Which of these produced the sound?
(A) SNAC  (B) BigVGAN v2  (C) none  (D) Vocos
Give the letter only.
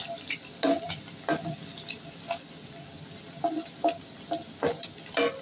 C